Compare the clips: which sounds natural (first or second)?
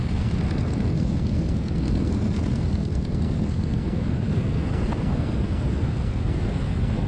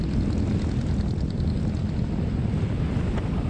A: second